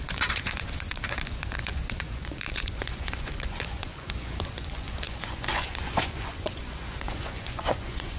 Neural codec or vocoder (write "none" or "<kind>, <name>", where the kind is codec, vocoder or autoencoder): vocoder, Vocos